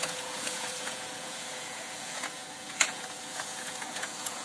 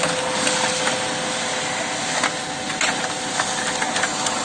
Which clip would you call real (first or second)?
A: second